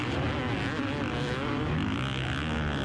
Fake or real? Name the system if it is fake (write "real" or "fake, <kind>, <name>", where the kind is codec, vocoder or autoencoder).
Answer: real